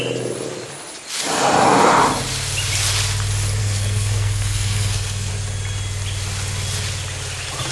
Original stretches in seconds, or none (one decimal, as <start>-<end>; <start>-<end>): 0.0-3.6; 5.3-7.7